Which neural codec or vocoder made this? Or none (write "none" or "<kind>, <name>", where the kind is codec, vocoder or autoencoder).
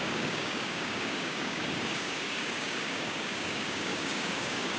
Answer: codec, DAC